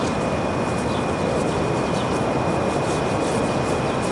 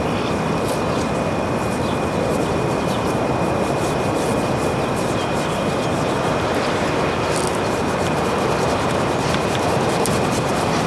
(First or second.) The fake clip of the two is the second